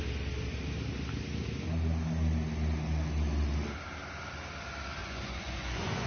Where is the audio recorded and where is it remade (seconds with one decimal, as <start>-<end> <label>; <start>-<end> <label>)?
0.0-5.0 recorded; 5.0-6.1 remade